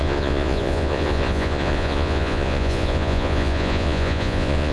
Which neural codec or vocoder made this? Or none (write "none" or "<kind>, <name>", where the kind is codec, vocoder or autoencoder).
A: vocoder, Vocos